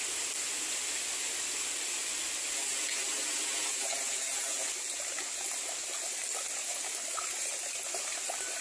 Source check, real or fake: real